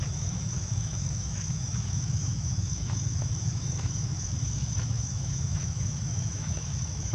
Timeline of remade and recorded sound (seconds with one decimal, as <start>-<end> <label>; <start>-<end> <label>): 0.0-7.1 remade